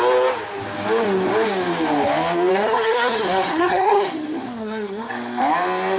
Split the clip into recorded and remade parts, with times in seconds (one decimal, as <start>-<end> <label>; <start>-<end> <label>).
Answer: 0.0-2.5 recorded; 2.5-5.1 remade; 5.1-6.0 recorded